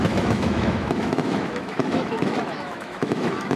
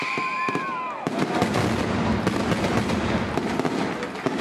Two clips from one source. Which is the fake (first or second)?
first